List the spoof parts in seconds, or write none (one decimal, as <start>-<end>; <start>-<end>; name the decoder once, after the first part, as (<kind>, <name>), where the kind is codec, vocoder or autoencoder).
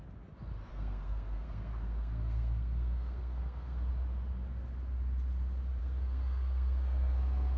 0.7-3.9 (codec, SNAC); 5.8-7.6